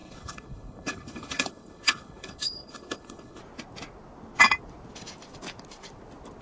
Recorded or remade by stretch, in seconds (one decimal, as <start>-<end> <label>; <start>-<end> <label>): 0.0-3.4 remade; 3.4-6.4 recorded